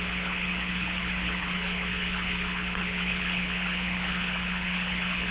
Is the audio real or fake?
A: fake